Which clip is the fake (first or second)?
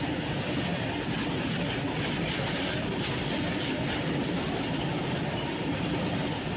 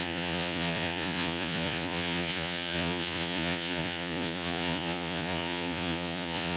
second